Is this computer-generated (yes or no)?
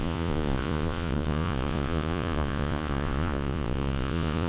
yes